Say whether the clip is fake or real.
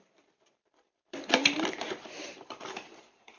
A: fake